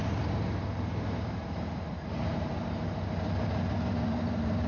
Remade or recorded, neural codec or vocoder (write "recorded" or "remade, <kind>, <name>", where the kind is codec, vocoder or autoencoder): remade, vocoder, BigVGAN v2